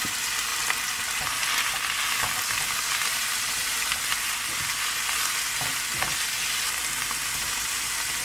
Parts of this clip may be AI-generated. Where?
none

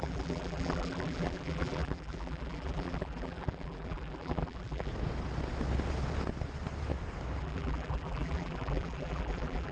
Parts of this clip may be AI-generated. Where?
0.0-4.9 (vocoder, BigVGAN v2); 7.4-9.7

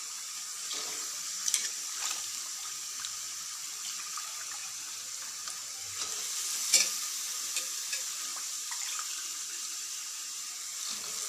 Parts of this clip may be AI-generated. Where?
8.3-10.6 (vocoder, BigVGAN v2)

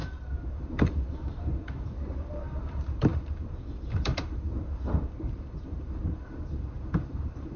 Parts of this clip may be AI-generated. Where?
0.0-7.6 (vocoder, BigVGAN v2)

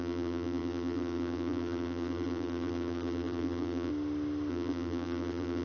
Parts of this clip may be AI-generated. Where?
0.0-3.9 (vocoder, BigVGAN v2); 4.5-5.6

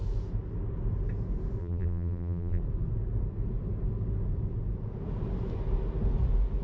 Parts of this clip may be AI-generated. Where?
1.6-2.6 (vocoder, BigVGAN v2)

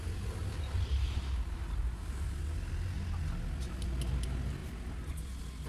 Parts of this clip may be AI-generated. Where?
0.4-2.4 (vocoder, BigVGAN v2)